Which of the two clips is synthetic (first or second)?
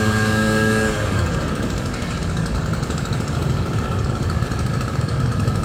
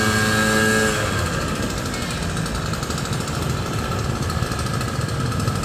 first